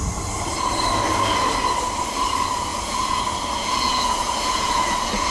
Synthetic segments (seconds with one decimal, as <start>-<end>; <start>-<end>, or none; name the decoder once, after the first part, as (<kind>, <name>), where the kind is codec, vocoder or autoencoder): 2.7-3.2 (vocoder, Vocos); 3.6-5.3